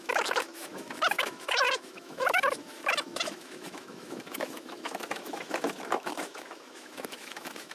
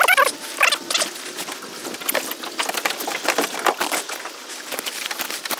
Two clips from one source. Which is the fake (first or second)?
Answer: first